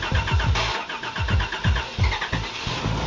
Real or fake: real